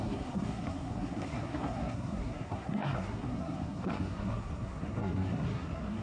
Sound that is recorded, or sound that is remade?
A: remade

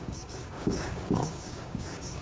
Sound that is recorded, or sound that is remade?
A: remade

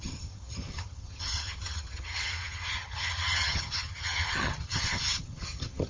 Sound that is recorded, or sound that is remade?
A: remade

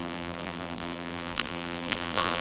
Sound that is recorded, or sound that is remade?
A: remade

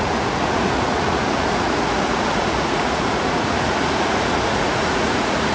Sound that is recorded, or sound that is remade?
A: remade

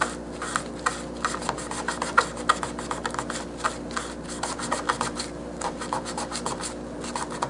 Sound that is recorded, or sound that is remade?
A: recorded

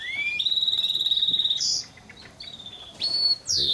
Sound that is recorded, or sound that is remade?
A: remade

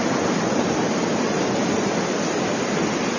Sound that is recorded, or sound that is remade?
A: recorded